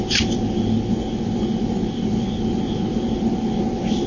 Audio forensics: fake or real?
real